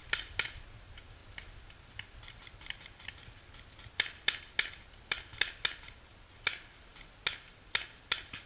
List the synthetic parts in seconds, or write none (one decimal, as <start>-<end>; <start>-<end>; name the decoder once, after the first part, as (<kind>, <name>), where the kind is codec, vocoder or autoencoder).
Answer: none